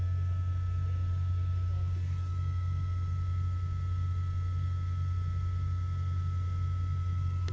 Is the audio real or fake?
real